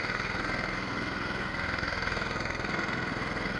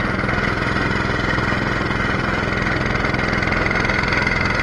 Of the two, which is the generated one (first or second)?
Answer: first